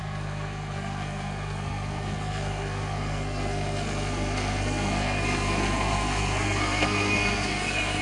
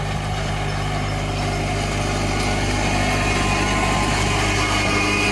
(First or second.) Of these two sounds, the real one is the second